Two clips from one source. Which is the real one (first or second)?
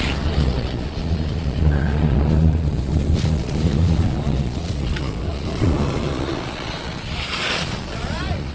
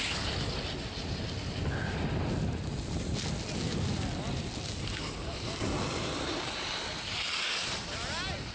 second